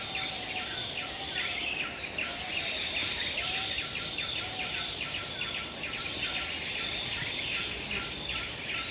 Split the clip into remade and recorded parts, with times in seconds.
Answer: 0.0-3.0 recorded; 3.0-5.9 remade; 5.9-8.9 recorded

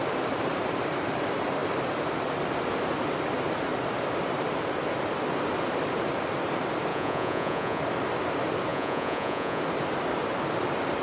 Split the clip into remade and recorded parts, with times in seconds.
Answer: 0.0-6.9 recorded; 6.9-7.8 remade; 7.8-8.7 recorded; 8.7-9.6 remade; 9.6-11.0 recorded